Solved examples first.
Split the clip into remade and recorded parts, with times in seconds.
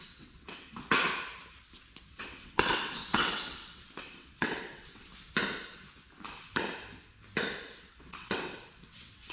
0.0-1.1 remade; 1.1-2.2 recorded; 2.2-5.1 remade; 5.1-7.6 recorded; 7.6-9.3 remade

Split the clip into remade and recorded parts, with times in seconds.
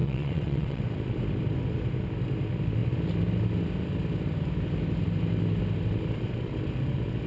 0.0-0.8 remade; 0.8-7.3 recorded